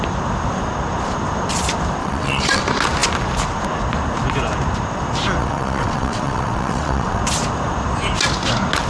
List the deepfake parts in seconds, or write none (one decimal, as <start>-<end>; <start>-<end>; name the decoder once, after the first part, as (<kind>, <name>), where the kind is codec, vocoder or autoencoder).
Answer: 2.0-2.6 (vocoder, WaveNeXt); 5.4-7.2